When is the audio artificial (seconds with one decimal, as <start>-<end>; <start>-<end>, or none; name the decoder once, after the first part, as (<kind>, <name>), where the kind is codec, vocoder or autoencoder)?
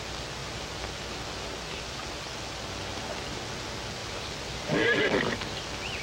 0.4-3.0 (vocoder, BigVGAN v2); 4.0-5.2